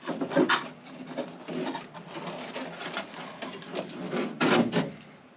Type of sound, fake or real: real